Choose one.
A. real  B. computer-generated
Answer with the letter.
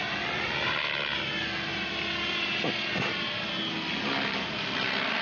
A